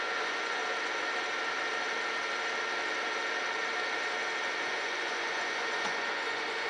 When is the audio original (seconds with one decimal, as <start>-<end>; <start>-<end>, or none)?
0.6-4.6